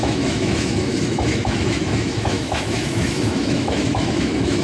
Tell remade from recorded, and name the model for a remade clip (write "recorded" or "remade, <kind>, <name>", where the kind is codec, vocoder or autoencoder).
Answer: remade, autoencoder, DAC-VAE